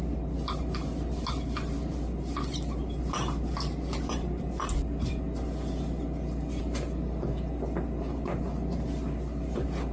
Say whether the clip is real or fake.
real